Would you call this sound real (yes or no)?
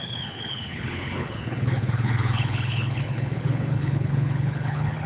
no